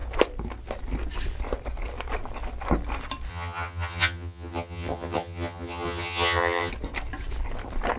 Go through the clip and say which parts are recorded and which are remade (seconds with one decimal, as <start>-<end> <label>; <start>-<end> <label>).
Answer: 0.0-3.3 recorded; 3.3-6.7 remade; 6.7-8.0 recorded